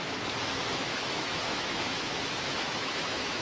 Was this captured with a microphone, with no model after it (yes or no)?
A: no